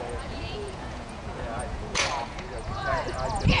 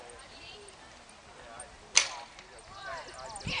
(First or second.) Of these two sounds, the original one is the second